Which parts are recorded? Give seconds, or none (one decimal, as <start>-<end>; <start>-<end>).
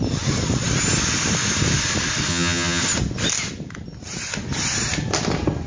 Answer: 0.0-2.3; 2.8-5.7